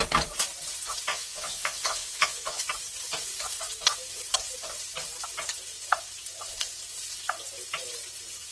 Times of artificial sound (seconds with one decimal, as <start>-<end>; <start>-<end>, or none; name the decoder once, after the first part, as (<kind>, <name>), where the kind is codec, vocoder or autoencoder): 1.1-2.6 (vocoder, Vocos)